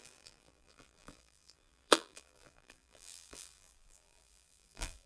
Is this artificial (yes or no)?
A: yes